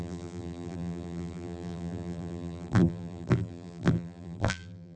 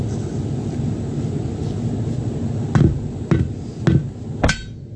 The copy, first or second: first